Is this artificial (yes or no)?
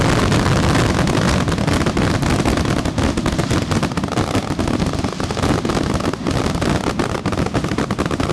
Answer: no